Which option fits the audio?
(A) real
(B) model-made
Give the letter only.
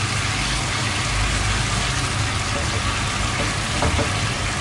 A